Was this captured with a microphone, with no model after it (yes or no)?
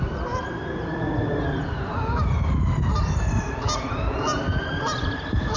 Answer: yes